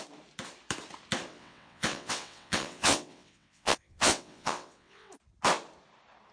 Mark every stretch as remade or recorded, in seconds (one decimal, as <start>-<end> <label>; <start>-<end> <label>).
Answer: 0.0-1.3 recorded; 1.3-5.1 remade; 5.1-6.3 recorded